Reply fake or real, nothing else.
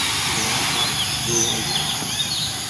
real